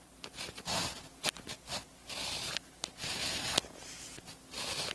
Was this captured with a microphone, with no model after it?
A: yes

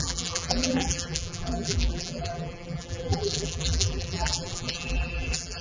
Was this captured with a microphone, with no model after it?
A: no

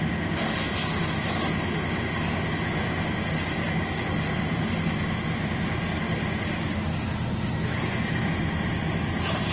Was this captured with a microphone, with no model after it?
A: yes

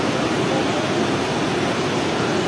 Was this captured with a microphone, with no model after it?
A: yes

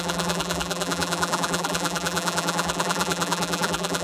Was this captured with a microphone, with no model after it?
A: no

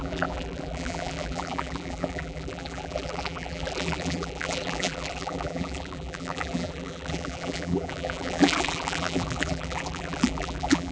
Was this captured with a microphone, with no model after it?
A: no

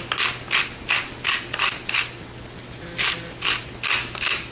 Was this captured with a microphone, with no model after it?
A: yes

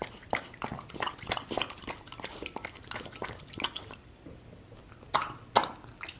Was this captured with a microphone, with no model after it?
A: yes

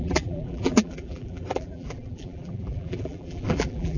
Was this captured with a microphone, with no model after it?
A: no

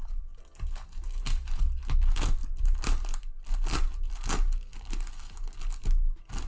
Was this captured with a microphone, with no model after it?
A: yes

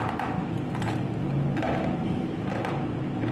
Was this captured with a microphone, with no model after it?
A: yes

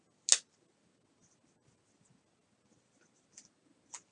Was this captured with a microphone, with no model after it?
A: yes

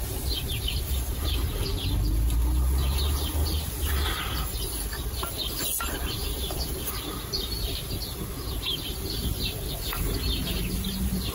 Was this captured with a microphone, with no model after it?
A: yes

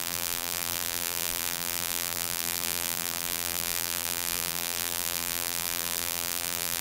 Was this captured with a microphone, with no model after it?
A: no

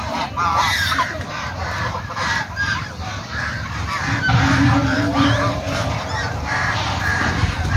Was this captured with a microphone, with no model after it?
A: no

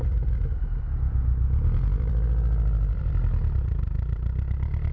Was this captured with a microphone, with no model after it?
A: no